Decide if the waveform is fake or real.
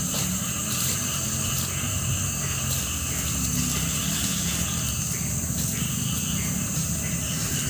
real